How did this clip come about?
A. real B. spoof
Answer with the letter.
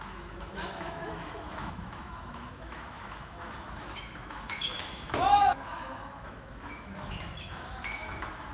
B